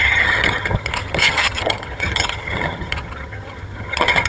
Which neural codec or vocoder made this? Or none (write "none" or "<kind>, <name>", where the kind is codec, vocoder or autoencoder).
vocoder, HiFi-GAN